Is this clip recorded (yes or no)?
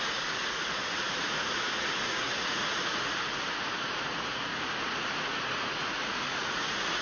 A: no